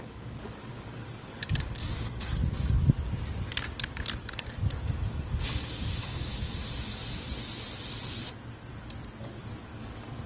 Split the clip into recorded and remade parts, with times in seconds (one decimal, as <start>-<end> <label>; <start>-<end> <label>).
0.0-2.4 remade; 2.4-4.2 recorded; 4.2-6.6 remade; 6.6-9.2 recorded; 9.2-10.3 remade